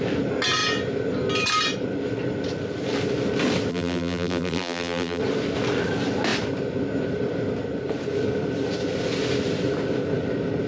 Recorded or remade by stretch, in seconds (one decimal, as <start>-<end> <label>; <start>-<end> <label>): 0.0-3.7 recorded; 3.7-5.2 remade; 5.2-10.7 recorded

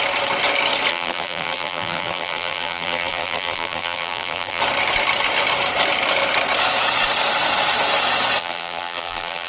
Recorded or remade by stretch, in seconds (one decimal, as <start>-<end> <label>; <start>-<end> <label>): 0.0-0.9 recorded; 0.9-4.6 remade; 4.6-8.4 recorded; 8.4-9.5 remade

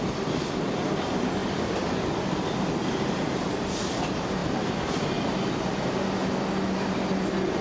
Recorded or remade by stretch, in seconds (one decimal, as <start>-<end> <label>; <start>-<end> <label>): 0.0-7.6 recorded

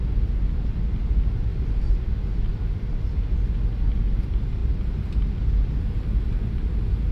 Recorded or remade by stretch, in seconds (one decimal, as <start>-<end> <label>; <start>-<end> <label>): 0.0-1.5 recorded; 1.5-2.0 remade; 2.0-7.1 recorded